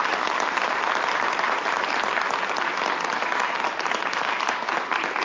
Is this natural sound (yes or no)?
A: yes